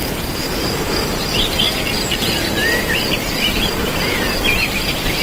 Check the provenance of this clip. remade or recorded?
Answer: recorded